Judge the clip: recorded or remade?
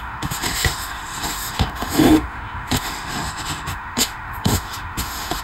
remade